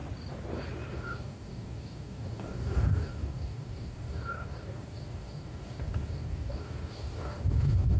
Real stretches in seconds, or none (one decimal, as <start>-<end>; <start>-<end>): 0.0-0.9